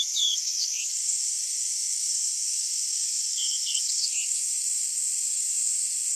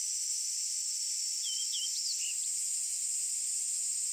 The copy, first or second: first